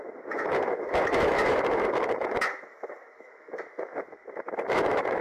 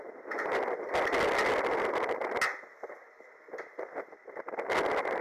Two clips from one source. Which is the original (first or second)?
second